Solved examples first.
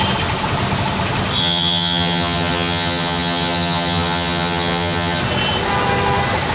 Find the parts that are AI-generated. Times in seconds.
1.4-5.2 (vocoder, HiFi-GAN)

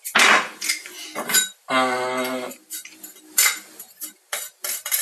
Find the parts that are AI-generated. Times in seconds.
none

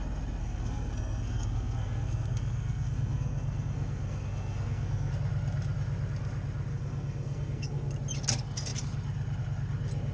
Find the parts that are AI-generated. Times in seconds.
0.4-5.1 (codec, SNAC); 6.7-7.9

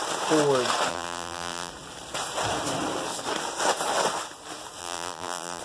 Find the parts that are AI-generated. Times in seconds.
0.9-1.7 (vocoder, BigVGAN v2); 4.8-5.6

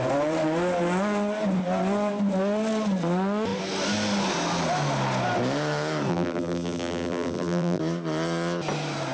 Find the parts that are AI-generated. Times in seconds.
6.1-7.8 (vocoder, BigVGAN v2)

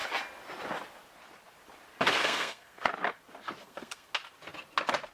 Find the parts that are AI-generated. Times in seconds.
2.2-2.9 (codec, SNAC); 3.6-4.1